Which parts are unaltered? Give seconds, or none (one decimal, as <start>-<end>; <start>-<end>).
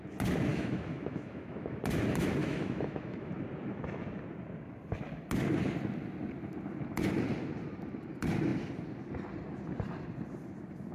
0.0-0.5; 1.8-2.4; 3.3-10.9